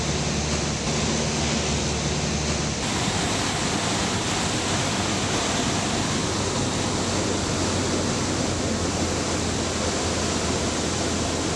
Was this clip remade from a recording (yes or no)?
no